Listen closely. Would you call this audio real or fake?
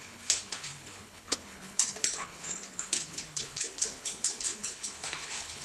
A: fake